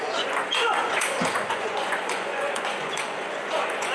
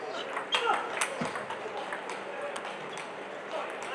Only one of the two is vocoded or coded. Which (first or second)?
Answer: first